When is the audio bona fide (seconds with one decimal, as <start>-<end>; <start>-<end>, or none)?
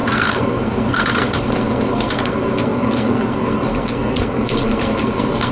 none